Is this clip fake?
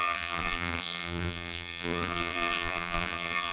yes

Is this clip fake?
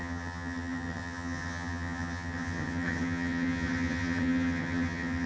yes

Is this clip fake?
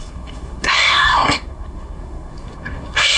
yes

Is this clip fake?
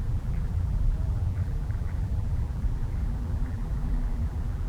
yes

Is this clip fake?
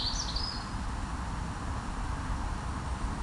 no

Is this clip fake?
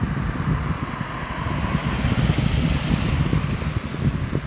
no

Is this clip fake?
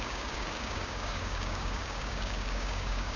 yes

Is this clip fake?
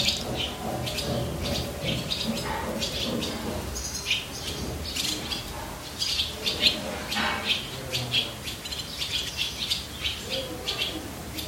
no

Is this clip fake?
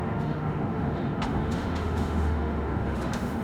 yes